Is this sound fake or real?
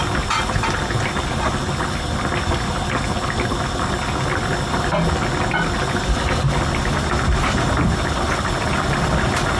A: real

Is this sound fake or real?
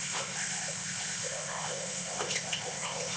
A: fake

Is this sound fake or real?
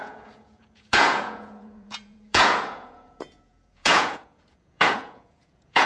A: fake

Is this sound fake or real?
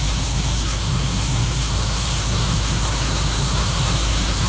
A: fake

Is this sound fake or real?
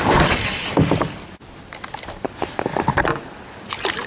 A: real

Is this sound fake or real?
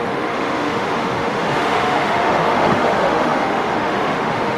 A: fake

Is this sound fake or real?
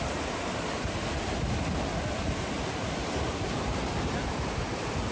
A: real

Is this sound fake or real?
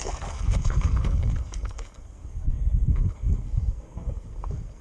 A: fake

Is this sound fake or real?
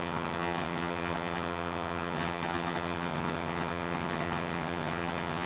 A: fake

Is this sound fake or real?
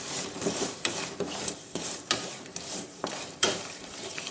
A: fake